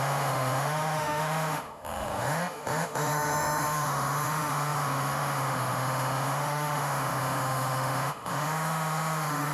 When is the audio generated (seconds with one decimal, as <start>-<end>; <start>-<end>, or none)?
0.0-9.5